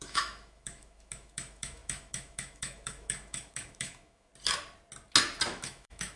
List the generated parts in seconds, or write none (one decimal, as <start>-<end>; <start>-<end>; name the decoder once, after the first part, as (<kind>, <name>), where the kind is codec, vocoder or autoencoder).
0.0-4.3 (autoencoder, DAC-VAE); 5.5-6.2